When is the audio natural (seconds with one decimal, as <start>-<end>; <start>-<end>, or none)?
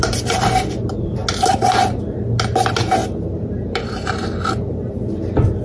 0.0-5.6